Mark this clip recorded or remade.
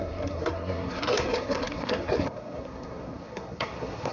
remade